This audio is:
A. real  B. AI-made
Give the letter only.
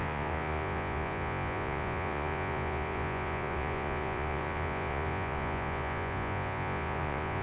B